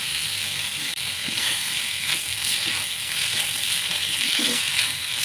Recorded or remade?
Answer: remade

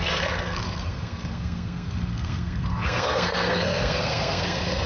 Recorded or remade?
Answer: remade